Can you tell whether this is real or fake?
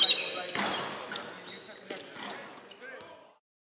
real